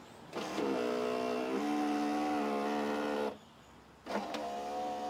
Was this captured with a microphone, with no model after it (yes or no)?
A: yes